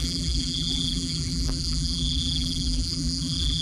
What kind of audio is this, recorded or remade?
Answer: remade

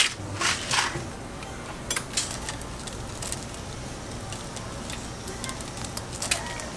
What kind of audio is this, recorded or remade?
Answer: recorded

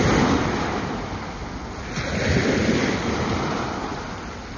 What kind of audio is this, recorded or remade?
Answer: recorded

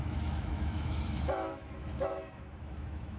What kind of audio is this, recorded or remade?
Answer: remade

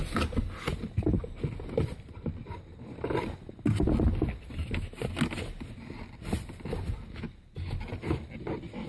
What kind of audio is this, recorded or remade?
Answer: recorded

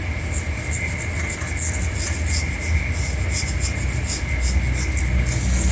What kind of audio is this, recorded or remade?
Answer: recorded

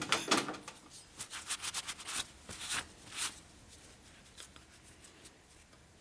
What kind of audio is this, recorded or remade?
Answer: recorded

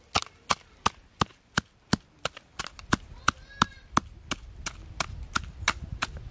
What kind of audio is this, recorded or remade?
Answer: recorded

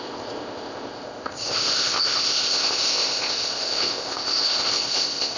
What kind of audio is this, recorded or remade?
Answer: remade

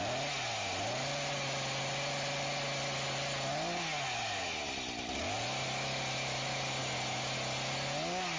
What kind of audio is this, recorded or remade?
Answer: recorded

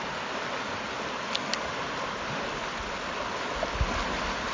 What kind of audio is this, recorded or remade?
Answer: recorded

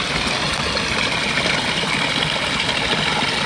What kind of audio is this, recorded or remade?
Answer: recorded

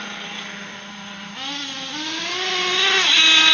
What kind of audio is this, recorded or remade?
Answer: recorded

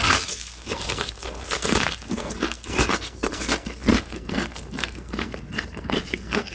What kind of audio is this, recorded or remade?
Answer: remade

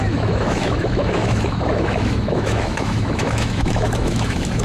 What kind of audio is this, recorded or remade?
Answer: remade